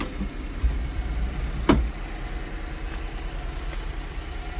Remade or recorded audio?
recorded